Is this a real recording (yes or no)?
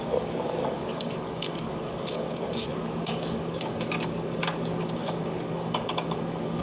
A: no